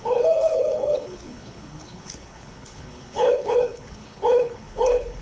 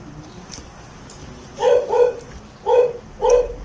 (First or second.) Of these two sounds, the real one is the second